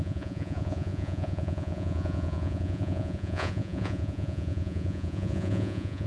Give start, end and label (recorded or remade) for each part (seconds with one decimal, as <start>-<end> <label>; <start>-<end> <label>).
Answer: 0.0-6.1 remade